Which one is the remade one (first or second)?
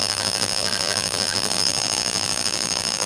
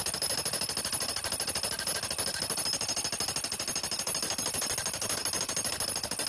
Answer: first